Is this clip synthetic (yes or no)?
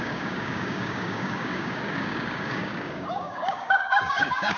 yes